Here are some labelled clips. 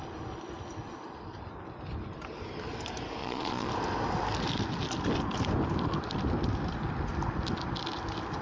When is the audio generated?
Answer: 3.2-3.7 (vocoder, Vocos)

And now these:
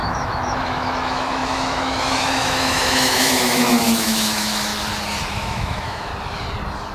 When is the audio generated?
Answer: 0.0-4.7 (autoencoder, DAC-VAE); 5.3-6.1

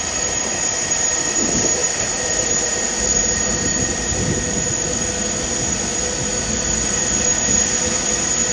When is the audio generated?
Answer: none

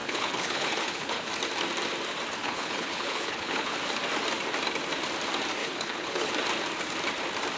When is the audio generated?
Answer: 0.0-1.3 (codec, HILCodec); 2.4-3.9; 5.6-6.3

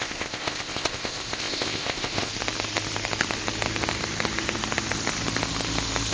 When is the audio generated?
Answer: 0.0-2.3 (codec, ZipCodec)

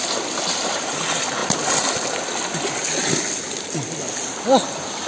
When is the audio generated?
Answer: none